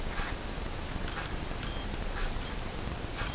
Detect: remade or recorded recorded